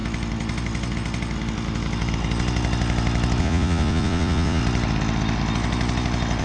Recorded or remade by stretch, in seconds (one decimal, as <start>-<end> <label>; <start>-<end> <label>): 0.0-3.4 recorded; 3.4-4.6 remade; 4.6-6.4 recorded